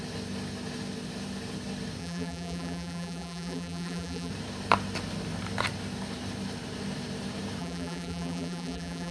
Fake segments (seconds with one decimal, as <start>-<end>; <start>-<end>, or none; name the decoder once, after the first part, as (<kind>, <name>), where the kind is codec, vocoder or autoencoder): 2.0-4.3 (vocoder, BigVGAN v2); 7.6-9.1